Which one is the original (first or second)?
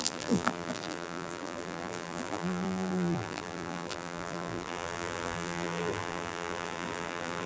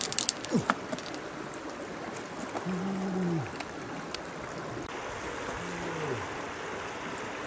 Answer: second